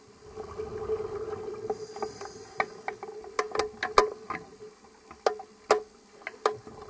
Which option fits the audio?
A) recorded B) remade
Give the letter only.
A